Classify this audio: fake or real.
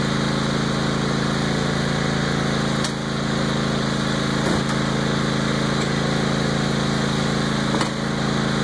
real